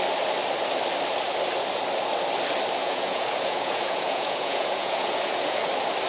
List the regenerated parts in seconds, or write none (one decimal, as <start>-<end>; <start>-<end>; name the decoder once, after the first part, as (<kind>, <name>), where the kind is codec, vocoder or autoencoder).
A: 2.8-5.6 (vocoder, Vocos)